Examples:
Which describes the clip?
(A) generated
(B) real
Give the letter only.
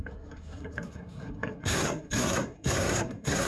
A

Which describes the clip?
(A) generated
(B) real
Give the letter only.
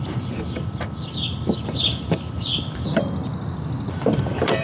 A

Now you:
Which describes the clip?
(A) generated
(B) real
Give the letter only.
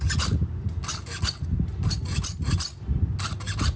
B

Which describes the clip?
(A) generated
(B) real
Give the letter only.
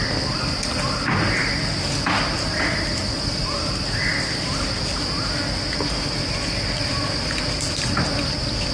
B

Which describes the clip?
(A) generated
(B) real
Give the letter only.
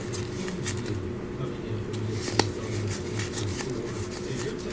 B